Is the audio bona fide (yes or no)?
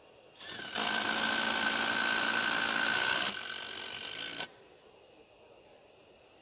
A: yes